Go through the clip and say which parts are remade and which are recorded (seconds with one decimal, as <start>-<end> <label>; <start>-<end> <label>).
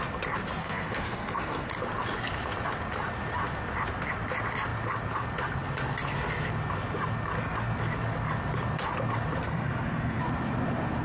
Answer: 0.0-0.6 recorded; 0.6-1.7 remade; 1.7-9.4 recorded; 9.4-10.2 remade; 10.2-11.0 recorded